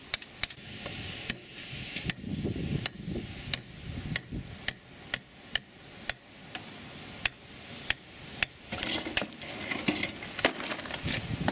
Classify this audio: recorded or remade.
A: recorded